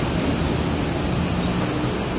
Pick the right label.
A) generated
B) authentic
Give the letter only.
B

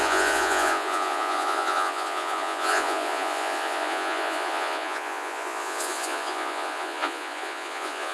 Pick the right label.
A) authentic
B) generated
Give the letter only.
B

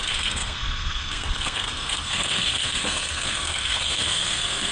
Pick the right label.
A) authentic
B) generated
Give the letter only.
B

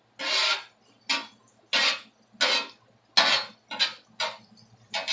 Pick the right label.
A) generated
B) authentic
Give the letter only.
B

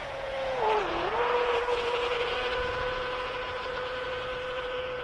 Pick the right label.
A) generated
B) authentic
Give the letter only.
A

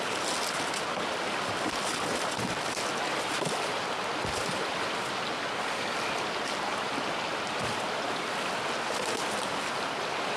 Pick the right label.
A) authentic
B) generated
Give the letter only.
A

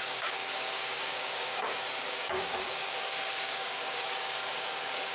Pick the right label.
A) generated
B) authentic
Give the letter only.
A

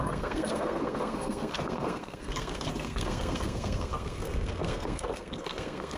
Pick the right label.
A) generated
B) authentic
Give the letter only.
A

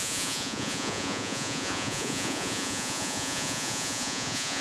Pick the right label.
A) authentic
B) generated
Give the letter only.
B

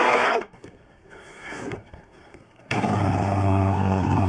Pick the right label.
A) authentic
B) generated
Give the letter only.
B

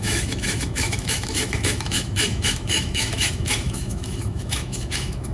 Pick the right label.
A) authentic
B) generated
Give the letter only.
B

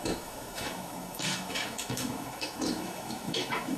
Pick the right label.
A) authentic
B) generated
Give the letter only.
B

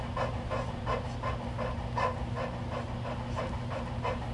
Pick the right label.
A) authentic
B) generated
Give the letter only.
A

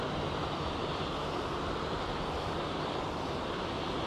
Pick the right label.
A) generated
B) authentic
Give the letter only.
B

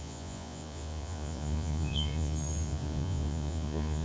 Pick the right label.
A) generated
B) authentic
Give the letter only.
A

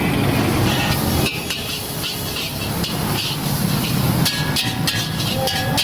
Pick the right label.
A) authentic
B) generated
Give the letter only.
A